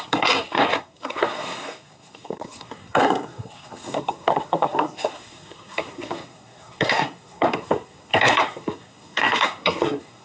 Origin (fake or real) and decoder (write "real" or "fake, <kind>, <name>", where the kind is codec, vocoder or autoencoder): fake, codec, SNAC